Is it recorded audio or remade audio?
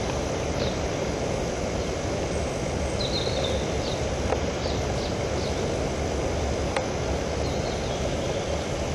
recorded